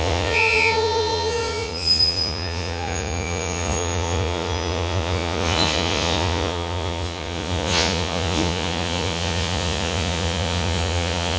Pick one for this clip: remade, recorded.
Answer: remade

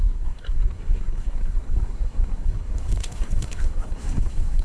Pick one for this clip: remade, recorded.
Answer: remade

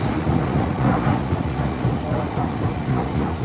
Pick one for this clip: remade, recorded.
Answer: remade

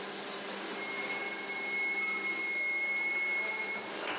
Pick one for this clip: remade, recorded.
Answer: recorded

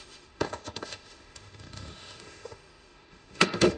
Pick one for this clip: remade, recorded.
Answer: remade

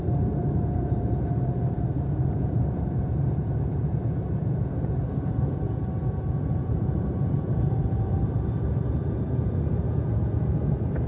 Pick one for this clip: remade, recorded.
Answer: remade